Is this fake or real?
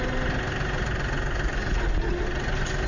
real